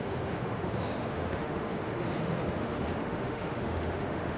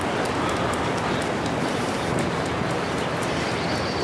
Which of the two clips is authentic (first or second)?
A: second